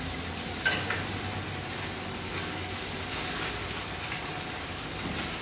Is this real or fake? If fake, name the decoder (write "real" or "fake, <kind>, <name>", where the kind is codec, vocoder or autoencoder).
real